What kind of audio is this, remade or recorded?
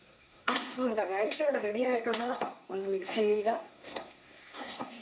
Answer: remade